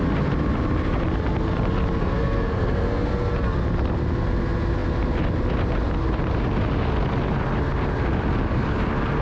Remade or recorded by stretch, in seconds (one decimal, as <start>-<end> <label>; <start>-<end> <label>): 0.0-2.0 recorded; 2.0-3.1 remade; 3.1-9.2 recorded